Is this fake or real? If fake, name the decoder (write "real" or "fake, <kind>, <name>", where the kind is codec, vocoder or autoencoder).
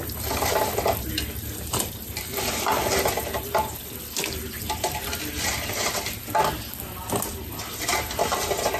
real